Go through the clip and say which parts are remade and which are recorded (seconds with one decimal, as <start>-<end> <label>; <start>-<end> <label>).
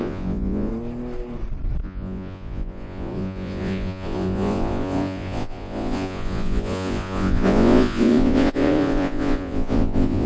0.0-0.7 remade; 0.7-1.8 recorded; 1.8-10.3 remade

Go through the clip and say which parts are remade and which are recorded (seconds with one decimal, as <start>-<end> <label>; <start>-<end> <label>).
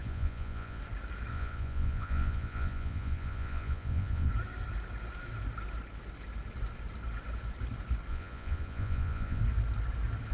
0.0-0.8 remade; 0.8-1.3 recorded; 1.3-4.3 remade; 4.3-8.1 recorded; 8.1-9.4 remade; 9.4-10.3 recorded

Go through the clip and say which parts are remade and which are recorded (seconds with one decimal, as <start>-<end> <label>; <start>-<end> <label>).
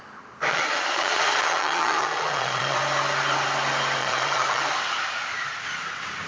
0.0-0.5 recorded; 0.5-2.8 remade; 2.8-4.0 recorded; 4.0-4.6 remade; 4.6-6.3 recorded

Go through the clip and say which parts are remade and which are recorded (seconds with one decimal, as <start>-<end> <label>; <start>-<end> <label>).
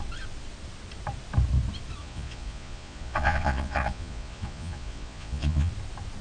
0.0-2.0 recorded; 2.0-5.7 remade; 5.7-6.2 recorded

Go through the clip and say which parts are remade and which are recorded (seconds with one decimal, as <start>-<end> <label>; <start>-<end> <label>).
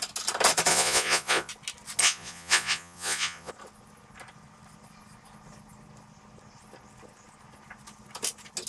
0.0-0.7 recorded; 0.7-1.5 remade; 1.5-2.0 recorded; 2.0-3.5 remade; 3.5-8.7 recorded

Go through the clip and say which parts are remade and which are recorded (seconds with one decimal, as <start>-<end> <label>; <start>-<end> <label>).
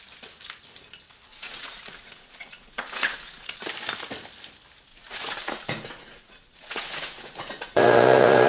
0.0-1.3 recorded; 1.3-3.6 remade; 3.6-4.9 recorded; 4.9-8.5 remade